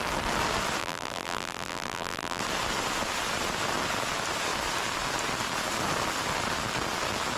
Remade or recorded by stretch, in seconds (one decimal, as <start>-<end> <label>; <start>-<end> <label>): 0.0-0.8 recorded; 0.8-2.4 remade; 2.4-7.4 recorded